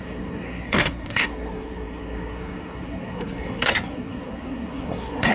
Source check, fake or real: fake